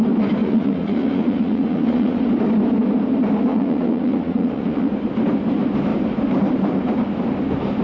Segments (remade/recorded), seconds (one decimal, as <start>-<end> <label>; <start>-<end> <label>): 0.0-0.4 recorded; 0.4-2.2 remade; 2.2-3.5 recorded; 3.5-4.9 remade; 4.9-7.8 recorded